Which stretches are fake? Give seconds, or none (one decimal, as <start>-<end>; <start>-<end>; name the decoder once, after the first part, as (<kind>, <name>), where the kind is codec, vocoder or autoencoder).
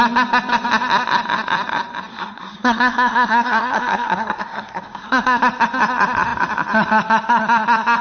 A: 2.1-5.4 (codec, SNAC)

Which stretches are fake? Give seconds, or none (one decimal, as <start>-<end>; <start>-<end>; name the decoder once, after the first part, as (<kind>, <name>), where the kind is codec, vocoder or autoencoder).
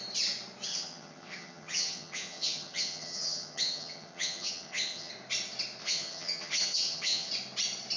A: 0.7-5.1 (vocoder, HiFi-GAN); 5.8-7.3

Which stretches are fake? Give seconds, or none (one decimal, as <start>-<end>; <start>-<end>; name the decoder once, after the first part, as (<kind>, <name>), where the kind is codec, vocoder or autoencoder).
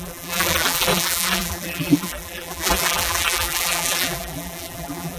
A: 0.0-5.2 (vocoder, BigVGAN v2)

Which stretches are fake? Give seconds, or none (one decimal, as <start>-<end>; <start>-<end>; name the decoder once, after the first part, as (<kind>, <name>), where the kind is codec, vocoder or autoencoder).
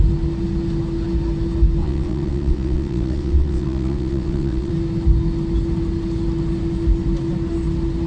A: 1.8-4.7 (vocoder, WaveNeXt)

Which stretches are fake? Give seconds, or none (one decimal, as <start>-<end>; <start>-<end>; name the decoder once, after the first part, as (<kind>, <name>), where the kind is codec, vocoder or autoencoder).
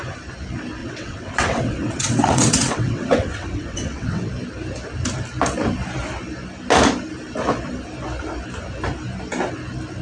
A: 0.8-4.3 (vocoder, WaveNeXt)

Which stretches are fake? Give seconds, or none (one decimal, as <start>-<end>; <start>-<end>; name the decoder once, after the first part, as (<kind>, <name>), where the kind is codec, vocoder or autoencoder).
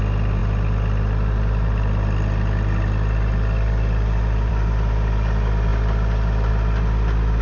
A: none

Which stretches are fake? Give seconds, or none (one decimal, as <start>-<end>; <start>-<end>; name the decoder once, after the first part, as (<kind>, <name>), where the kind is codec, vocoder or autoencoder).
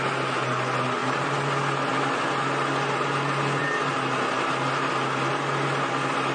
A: none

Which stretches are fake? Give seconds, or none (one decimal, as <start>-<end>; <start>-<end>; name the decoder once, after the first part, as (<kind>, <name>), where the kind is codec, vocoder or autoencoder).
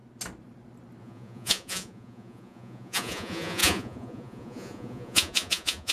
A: 1.0-5.9 (vocoder, Vocos)